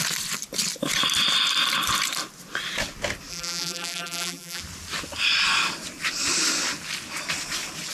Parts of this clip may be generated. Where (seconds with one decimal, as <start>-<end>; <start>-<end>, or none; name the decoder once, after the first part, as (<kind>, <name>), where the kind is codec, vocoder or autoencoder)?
3.3-4.6 (vocoder, BigVGAN v2)